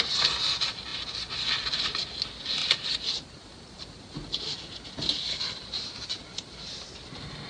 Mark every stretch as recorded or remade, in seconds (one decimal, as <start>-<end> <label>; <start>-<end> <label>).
0.0-2.6 recorded; 2.6-6.9 remade; 6.9-7.5 recorded